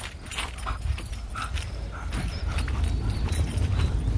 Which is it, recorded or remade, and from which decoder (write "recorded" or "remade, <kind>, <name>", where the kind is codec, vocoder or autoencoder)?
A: remade, vocoder, BigVGAN v2